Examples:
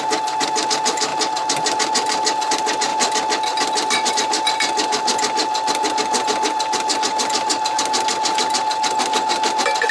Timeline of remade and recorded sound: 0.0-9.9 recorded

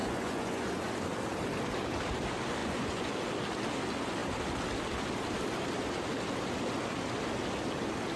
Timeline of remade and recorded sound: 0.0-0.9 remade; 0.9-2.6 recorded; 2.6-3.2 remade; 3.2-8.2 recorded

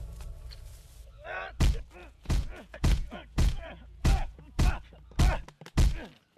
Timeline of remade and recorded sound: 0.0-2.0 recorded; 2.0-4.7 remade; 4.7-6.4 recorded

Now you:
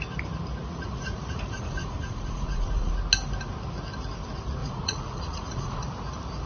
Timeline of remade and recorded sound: 0.0-0.6 recorded; 0.6-2.9 remade; 2.9-4.6 recorded; 4.6-5.8 remade; 5.8-6.5 recorded